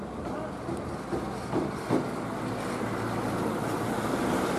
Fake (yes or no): no